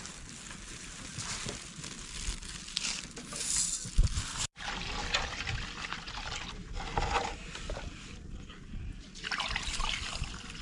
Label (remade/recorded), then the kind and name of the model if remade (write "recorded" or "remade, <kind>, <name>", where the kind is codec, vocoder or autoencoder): recorded